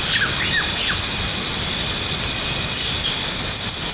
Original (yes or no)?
yes